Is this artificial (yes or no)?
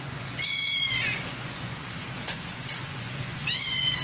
yes